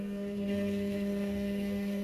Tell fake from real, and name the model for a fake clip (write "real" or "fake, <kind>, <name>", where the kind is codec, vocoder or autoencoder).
fake, codec, SNAC